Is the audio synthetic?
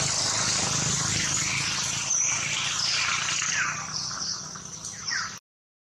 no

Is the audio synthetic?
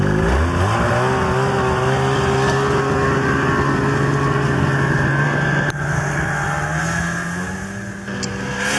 no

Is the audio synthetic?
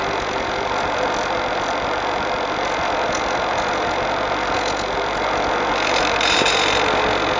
no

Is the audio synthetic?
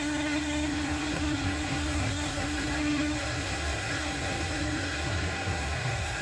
yes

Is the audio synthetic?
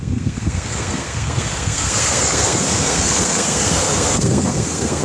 yes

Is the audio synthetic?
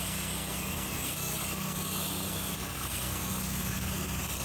yes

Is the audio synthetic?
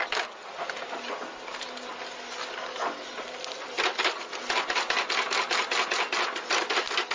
no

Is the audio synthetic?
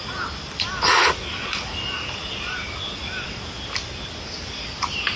no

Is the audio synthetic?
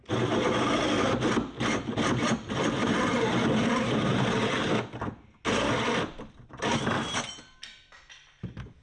no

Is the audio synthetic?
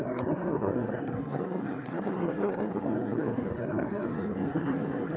yes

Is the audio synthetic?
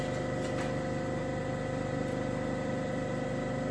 no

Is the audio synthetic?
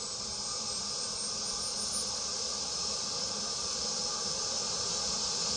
no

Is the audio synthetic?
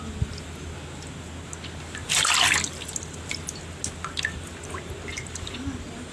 no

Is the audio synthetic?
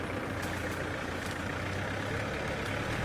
no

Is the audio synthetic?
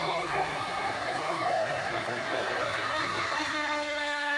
yes